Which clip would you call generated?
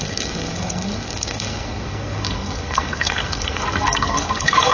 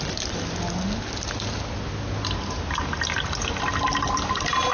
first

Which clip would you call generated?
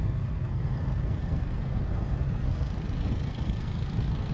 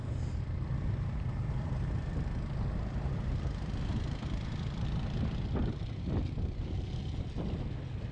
first